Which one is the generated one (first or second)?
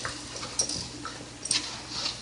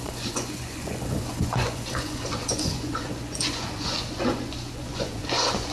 second